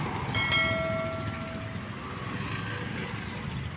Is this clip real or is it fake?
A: real